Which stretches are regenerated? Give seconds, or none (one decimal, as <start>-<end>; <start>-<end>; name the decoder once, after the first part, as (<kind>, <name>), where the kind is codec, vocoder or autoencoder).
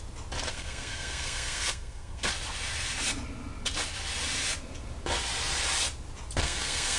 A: 0.5-2.3 (codec, SNAC); 6.4-7.0